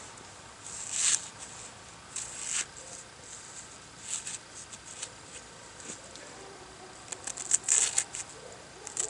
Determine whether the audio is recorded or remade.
recorded